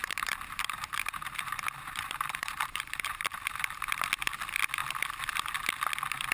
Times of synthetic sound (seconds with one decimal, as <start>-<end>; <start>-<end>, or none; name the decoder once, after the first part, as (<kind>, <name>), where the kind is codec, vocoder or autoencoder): 0.0-3.4 (vocoder, BigVGAN v2)